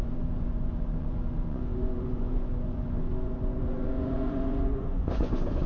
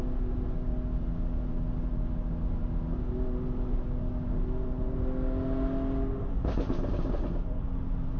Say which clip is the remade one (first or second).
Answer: first